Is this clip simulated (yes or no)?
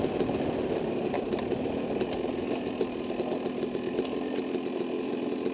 no